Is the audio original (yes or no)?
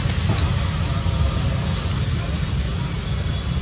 yes